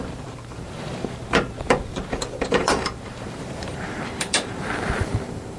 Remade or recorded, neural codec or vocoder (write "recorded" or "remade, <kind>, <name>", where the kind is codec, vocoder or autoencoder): remade, vocoder, BigVGAN v2